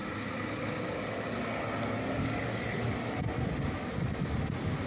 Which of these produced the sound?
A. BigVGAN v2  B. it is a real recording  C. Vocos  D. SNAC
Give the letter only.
B